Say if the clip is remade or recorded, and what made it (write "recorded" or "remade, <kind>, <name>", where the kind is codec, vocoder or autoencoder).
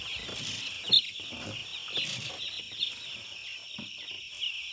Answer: recorded